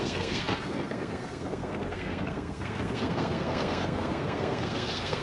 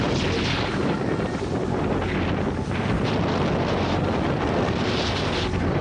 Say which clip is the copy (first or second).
first